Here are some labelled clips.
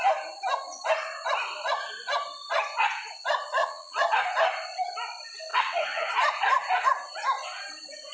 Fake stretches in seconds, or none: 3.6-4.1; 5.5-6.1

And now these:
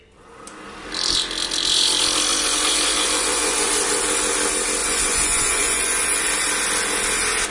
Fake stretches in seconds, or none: 2.3-3.7; 4.8-6.2

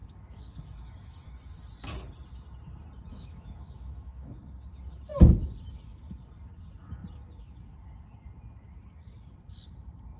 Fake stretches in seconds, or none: 0.0-1.7; 3.1-4.4

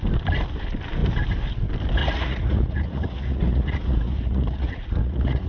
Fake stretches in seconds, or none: 2.0-5.5

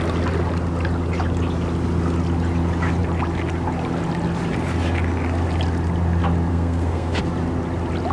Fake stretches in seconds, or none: 6.5-7.2

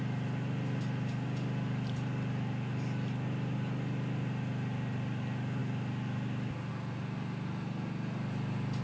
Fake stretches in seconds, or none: none

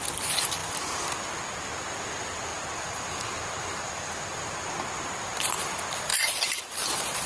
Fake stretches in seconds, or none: 2.5-4.7; 6.1-7.3

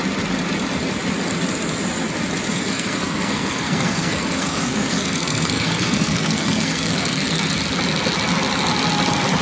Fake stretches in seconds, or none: 2.5-7.5